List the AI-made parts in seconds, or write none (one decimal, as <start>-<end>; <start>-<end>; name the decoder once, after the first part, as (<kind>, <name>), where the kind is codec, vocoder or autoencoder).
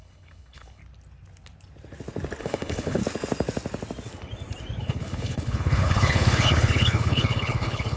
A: 0.0-0.8 (codec, HILCodec); 2.4-3.0; 4.8-8.0